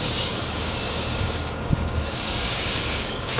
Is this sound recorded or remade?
remade